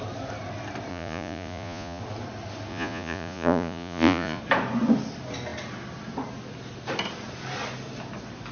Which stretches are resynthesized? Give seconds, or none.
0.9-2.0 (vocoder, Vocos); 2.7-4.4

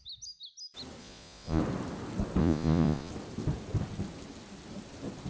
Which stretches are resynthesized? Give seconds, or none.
1.0-1.6 (vocoder, Vocos); 2.4-3.1

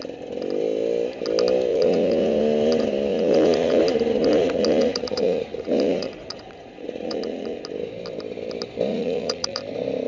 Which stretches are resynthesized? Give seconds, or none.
1.7-2.4 (vocoder, Vocos); 3.1-3.8; 4.2-7.6; 8.9-9.6

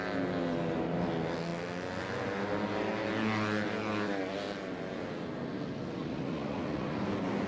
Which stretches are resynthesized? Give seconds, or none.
6.0-7.0 (vocoder, Vocos)

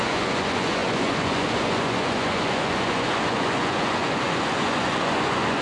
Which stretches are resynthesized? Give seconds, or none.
0.0-5.6 (vocoder, Vocos)